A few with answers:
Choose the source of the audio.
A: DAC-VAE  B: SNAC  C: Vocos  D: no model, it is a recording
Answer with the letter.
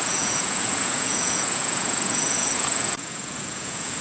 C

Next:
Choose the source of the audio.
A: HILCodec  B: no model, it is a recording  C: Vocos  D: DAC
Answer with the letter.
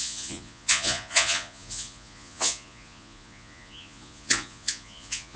C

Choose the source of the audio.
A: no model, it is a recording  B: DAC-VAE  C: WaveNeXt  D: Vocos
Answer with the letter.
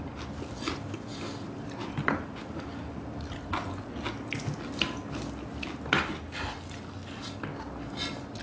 A